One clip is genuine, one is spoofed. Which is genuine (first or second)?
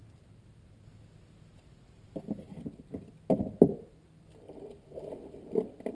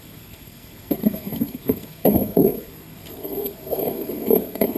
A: first